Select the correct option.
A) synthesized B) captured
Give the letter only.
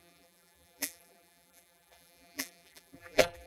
A